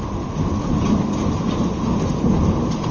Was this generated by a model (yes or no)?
no